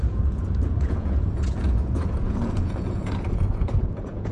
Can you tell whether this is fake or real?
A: fake